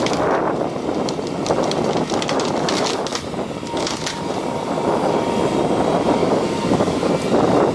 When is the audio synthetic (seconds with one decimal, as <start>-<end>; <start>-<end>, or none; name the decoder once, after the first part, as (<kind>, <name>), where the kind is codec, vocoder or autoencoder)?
6.2-7.1 (codec, DAC)